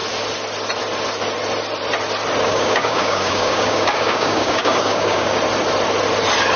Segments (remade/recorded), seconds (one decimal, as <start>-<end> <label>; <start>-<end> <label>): 0.0-2.5 recorded; 2.5-5.3 remade; 5.3-6.6 recorded